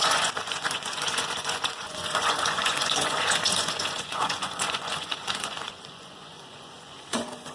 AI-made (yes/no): yes